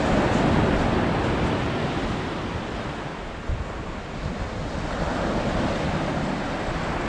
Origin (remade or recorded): recorded